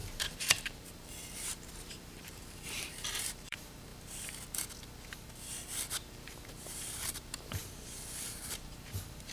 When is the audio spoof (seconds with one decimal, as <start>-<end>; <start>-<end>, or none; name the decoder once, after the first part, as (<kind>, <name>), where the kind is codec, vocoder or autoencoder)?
0.0-3.9 (vocoder, BigVGAN v2); 6.1-9.3